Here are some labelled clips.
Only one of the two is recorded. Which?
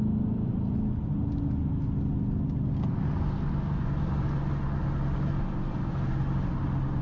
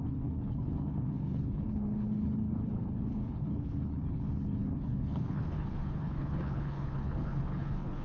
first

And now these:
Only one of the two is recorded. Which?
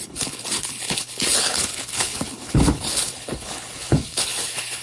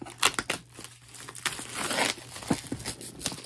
second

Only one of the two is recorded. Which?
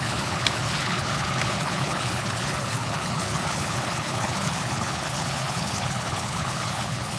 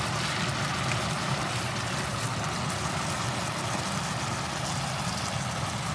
second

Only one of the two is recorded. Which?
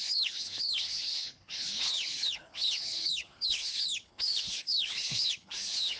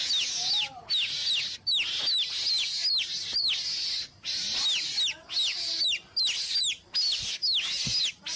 second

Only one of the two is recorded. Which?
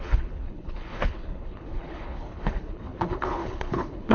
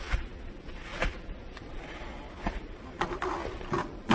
second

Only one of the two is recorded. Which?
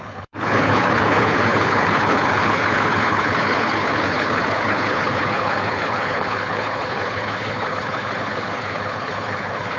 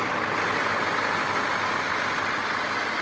second